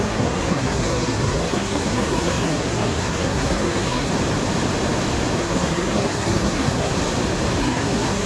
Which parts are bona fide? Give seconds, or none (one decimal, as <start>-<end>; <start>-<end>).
4.1-5.4; 6.9-7.6